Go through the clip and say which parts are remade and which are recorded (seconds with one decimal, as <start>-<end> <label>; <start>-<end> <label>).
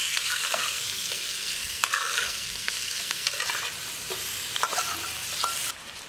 0.0-3.4 remade; 3.4-6.1 recorded